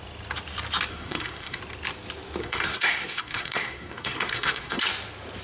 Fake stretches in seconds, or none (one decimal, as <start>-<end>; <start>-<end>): 0.9-1.6; 2.4-4.8